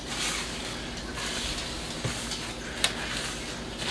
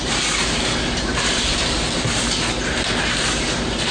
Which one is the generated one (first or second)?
second